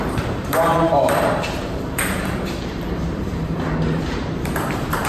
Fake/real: fake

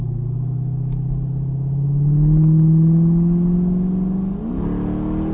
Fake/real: real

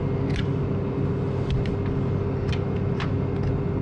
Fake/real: real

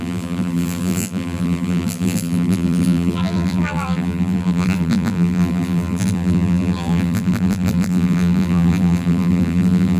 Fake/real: fake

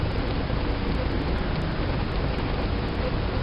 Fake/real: real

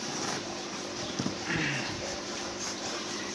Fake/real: fake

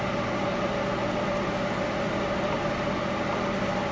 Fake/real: real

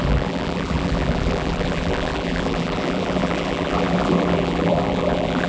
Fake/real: fake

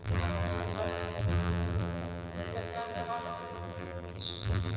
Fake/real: fake